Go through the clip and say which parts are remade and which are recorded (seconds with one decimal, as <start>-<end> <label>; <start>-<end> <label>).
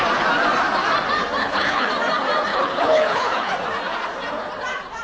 0.0-1.4 recorded; 1.4-1.9 remade; 1.9-2.5 recorded; 2.5-3.5 remade; 3.5-5.0 recorded